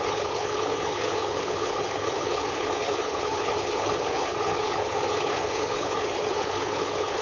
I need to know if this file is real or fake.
fake